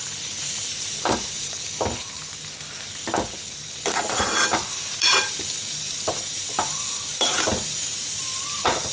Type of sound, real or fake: fake